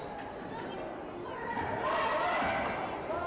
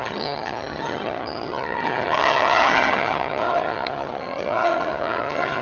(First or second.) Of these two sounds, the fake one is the second